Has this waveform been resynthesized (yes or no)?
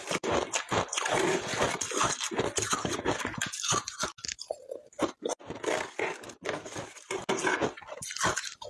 no